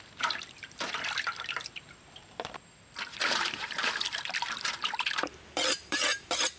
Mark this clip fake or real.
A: fake